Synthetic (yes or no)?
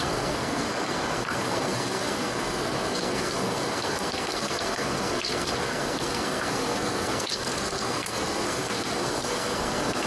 yes